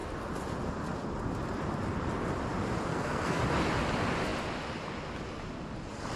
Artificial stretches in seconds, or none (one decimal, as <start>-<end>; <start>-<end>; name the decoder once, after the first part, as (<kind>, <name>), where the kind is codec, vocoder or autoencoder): 2.9-3.4 (codec, SNAC)